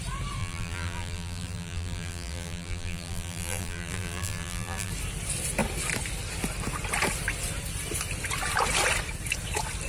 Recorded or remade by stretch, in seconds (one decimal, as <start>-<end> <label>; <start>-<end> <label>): 0.0-0.4 recorded; 0.4-4.9 remade; 4.9-9.9 recorded